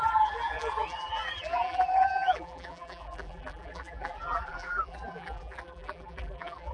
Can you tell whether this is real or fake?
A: fake